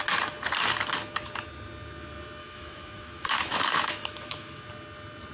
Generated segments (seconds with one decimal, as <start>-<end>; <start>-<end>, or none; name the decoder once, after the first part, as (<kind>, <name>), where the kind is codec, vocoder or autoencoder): 2.4-4.6 (autoencoder, DAC-VAE)